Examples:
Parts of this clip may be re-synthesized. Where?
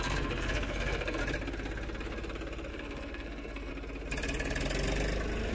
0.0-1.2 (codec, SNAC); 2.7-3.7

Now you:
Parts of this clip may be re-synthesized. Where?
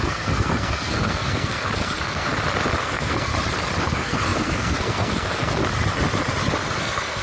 0.0-2.3 (codec, SNAC); 2.8-3.3; 3.8-5.6; 6.8-7.2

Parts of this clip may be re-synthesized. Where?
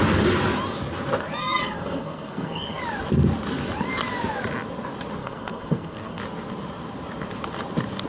1.4-2.8 (codec, SNAC); 5.2-6.2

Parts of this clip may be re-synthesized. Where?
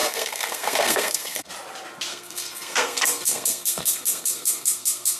0.0-1.5 (codec, SNAC); 2.1-5.2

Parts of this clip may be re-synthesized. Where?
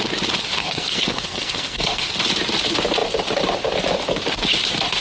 0.6-2.1 (codec, SNAC)